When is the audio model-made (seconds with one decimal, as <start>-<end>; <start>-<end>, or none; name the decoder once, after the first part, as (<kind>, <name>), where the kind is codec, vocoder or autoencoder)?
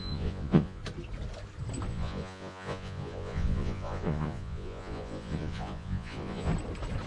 0.0-0.8 (vocoder, Vocos); 1.9-6.5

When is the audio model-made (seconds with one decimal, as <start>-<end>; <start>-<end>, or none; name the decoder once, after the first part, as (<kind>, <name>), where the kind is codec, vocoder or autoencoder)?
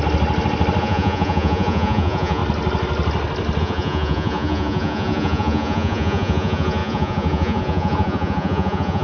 0.8-2.4 (vocoder, Vocos); 3.6-9.0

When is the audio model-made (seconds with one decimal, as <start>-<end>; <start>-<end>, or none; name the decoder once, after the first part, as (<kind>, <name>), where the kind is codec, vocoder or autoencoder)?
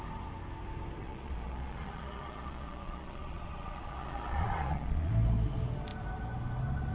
1.0-5.1 (vocoder, Vocos)